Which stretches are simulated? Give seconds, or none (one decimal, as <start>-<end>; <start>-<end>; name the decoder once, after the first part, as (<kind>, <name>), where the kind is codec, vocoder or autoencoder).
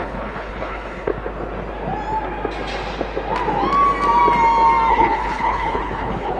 0.0-1.1 (codec, HILCodec); 4.9-6.4